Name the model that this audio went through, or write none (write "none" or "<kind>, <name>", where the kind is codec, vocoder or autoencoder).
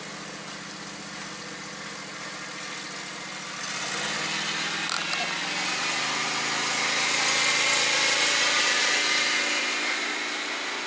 none